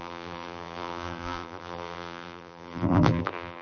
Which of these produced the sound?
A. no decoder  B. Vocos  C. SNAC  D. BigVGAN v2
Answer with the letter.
D